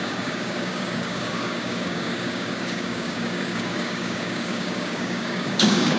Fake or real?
fake